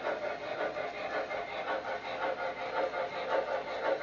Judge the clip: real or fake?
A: real